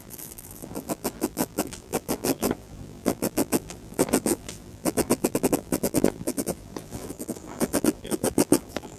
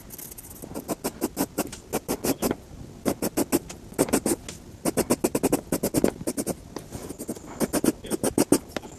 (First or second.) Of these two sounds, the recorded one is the second